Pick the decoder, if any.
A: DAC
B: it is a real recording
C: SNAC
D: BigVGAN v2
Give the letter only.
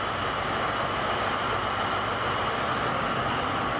B